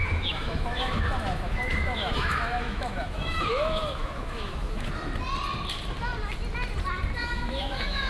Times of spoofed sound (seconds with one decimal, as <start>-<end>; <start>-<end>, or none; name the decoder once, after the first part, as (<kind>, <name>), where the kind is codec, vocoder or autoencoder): 0.0-4.9 (autoencoder, DAC-VAE); 7.2-8.1